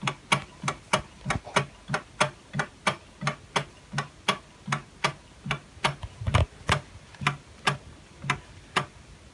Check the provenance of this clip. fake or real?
real